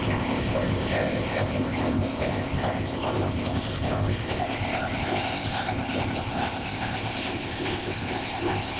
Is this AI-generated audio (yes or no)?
yes